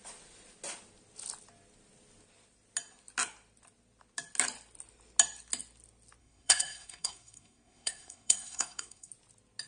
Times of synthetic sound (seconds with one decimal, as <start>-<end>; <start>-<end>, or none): 6.2-9.1